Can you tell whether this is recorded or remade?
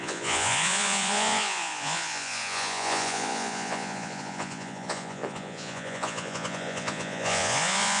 remade